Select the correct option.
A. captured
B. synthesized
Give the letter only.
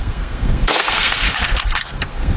B